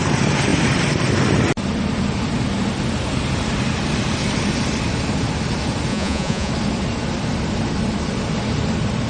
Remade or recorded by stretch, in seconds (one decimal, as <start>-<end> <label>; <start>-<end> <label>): 0.0-5.9 recorded; 5.9-6.5 remade; 6.5-9.1 recorded